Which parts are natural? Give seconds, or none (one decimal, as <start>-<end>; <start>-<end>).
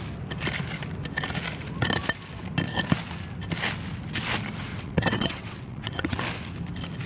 0.0-4.7; 6.2-7.1